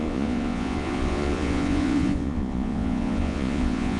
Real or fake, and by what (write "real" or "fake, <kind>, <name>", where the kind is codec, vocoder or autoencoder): fake, vocoder, Vocos